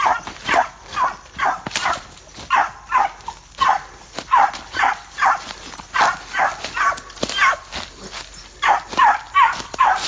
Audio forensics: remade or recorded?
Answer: recorded